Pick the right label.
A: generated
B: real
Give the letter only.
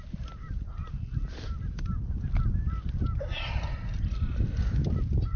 B